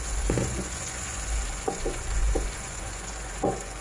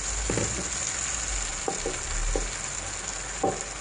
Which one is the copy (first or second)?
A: first